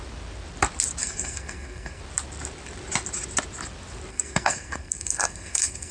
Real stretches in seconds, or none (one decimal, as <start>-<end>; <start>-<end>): 0.0-1.0; 2.0-4.1